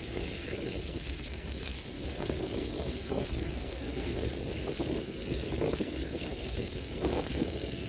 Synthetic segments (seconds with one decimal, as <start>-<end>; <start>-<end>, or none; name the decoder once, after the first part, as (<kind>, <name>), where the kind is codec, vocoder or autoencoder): 0.0-4.3 (codec, SNAC); 5.0-7.9